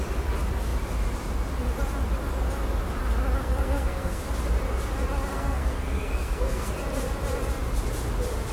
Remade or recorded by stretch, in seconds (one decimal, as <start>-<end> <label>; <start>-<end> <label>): 0.0-3.4 recorded; 3.4-4.2 remade; 4.2-5.3 recorded; 5.3-6.7 remade; 6.7-8.5 recorded

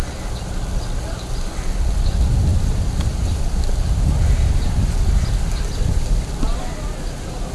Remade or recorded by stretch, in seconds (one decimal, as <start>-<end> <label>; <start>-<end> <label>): 0.0-2.5 recorded; 2.5-5.3 remade; 5.3-7.5 recorded

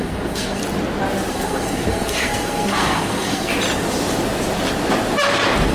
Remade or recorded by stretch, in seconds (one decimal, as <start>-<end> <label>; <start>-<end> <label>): 0.0-0.6 remade; 0.6-1.3 recorded; 1.3-3.5 remade; 3.5-5.7 recorded

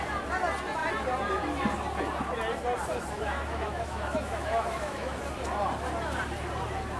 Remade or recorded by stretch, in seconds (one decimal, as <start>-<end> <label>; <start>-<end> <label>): 0.0-3.2 recorded; 3.2-5.2 remade; 5.2-7.0 recorded

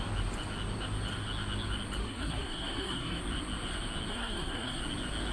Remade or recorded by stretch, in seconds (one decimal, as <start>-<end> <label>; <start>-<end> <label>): 0.0-2.0 recorded; 2.0-3.2 remade; 3.2-4.1 recorded; 4.1-4.8 remade; 4.8-5.3 recorded

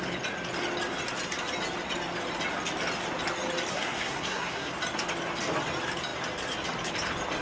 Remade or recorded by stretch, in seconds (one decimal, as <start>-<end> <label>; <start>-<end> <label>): 0.0-3.7 recorded; 3.7-4.7 remade; 4.7-7.4 recorded

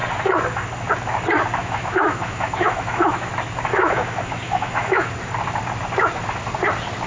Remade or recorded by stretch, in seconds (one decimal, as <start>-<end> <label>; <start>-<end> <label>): 0.0-1.6 recorded; 1.6-3.3 remade; 3.3-3.7 recorded; 3.7-5.1 remade; 5.1-7.1 recorded